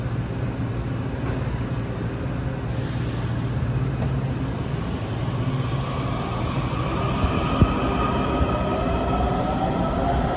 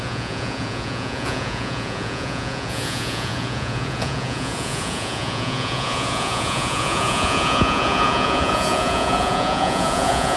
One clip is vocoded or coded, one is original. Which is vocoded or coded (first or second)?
second